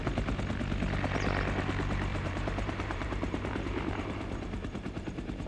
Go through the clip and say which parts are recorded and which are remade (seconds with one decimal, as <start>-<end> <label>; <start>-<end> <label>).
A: 0.0-2.1 recorded; 2.1-5.5 remade